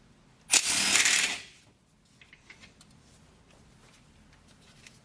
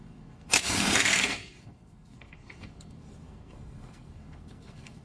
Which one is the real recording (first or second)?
first